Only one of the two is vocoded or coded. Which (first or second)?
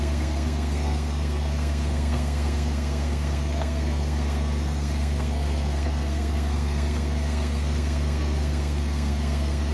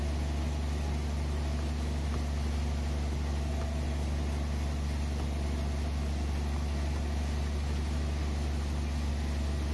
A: first